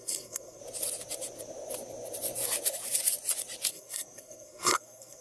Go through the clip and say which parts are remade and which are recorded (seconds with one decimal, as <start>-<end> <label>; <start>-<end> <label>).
0.0-0.6 remade; 0.6-3.7 recorded; 3.7-5.2 remade